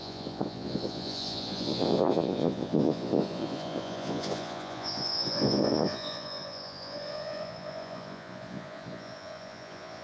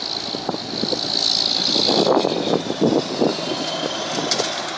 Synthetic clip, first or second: first